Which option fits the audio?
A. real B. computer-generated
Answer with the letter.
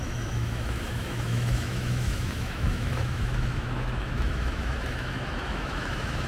B